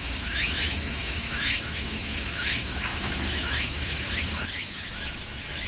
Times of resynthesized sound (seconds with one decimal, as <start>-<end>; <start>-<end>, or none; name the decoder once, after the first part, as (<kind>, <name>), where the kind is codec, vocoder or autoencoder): 0.0-5.7 (autoencoder, DAC-VAE)